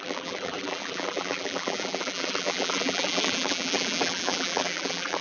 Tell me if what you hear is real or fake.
fake